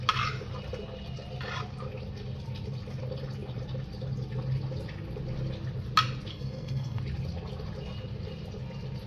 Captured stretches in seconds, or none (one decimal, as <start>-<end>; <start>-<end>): 0.0-6.3; 7.0-9.1